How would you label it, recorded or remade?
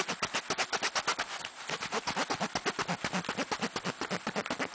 recorded